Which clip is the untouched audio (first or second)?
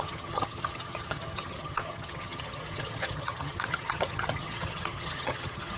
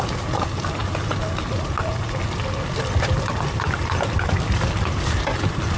second